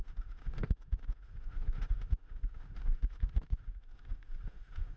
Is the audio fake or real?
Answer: fake